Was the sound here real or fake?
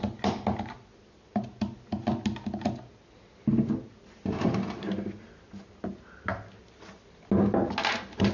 real